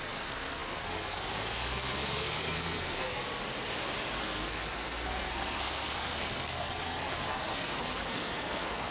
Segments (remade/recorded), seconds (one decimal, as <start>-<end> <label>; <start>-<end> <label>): 0.0-3.2 remade; 3.2-4.2 recorded; 4.2-8.9 remade